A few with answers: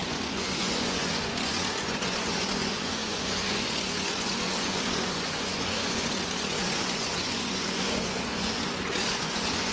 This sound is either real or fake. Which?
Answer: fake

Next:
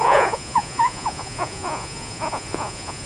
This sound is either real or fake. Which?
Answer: fake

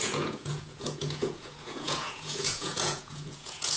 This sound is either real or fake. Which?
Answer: fake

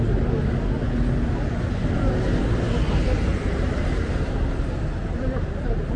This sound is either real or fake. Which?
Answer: real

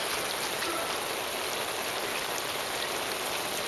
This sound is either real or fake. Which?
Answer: real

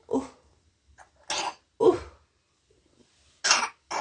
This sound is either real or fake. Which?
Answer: real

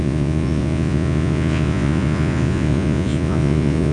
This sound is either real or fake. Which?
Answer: fake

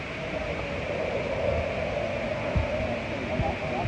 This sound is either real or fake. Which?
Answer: real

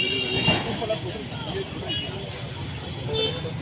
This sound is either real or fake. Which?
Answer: real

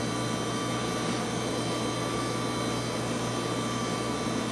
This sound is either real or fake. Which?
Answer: real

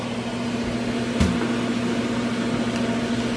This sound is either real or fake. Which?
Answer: real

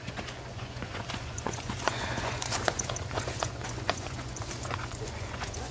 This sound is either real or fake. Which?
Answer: fake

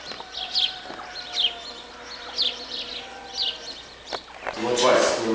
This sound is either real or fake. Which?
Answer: real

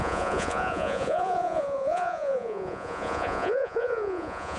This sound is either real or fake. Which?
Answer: fake